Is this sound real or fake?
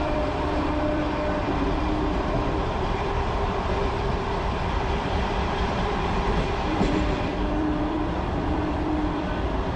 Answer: fake